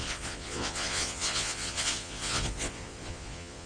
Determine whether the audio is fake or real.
fake